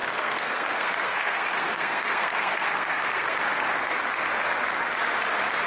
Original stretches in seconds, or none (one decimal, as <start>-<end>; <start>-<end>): 3.4-5.7